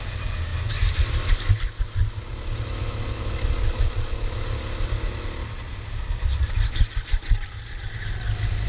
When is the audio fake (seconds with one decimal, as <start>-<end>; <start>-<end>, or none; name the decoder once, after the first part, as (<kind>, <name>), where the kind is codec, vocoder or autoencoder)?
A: none